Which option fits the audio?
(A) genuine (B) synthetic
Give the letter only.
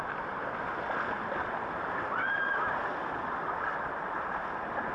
A